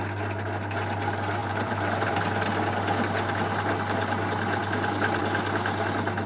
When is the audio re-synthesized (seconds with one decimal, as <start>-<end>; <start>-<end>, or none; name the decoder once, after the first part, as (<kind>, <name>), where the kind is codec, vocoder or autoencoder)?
1.4-2.2 (vocoder, BigVGAN v2)